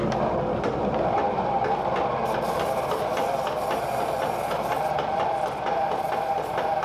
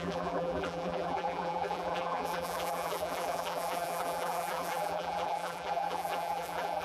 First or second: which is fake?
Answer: second